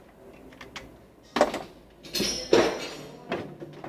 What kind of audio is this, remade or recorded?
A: recorded